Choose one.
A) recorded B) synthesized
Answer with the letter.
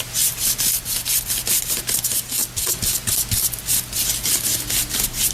A